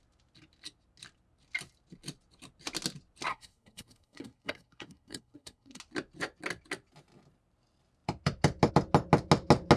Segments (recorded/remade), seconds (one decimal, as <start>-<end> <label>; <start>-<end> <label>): 0.0-3.3 recorded; 3.3-5.8 remade; 5.8-9.8 recorded